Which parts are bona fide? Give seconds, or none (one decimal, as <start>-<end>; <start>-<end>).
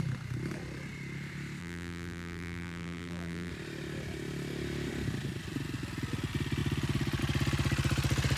0.0-1.6; 3.5-8.4